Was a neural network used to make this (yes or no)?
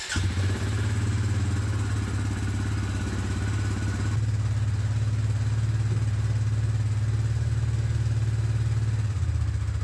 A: no